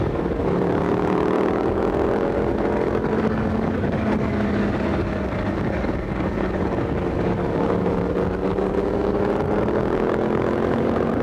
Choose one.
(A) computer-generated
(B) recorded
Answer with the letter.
A